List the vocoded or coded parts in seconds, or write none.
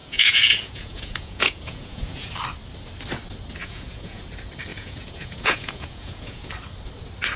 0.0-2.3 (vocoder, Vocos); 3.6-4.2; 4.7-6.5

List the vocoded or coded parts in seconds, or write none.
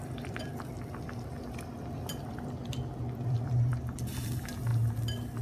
0.0-4.7 (vocoder, BigVGAN v2)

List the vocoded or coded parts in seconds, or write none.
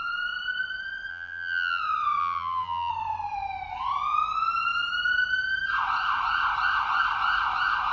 1.1-1.8 (vocoder, BigVGAN v2); 2.2-2.9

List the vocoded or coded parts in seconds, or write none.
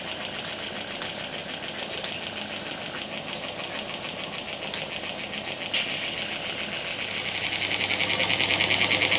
none